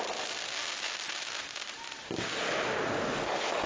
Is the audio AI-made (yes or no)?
no